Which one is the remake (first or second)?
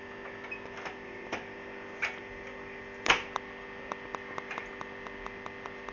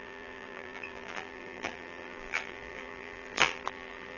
second